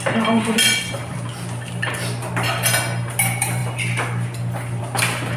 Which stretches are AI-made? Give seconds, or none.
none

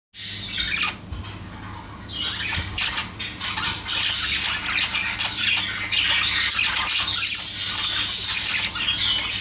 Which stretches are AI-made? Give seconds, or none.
none

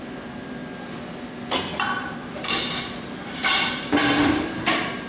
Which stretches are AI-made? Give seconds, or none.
0.0-5.1 (vocoder, BigVGAN v2)

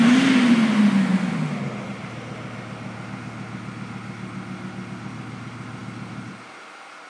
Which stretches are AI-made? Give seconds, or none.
none

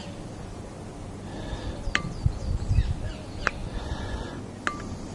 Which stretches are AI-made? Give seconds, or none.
3.6-4.5 (vocoder, Vocos)

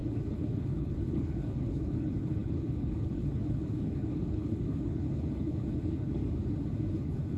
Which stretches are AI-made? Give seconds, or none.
0.0-6.2 (codec, HILCodec); 6.9-7.4

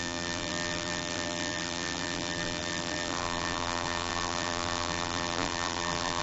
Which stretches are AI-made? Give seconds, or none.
0.0-6.2 (vocoder, BigVGAN v2)

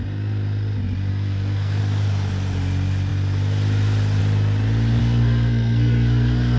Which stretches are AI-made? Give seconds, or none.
1.1-1.8 (codec, SNAC); 5.0-6.6